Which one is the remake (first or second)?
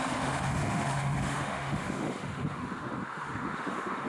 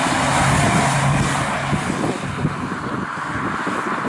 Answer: first